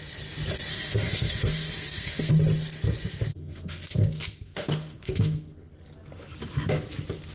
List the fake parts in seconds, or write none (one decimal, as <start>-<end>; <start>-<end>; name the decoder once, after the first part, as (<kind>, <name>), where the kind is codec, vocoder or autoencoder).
0.7-2.3 (codec, SNAC); 3.3-5.7